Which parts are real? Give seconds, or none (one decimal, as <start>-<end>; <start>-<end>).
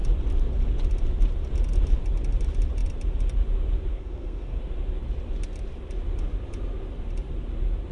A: 0.0-3.9; 4.6-7.9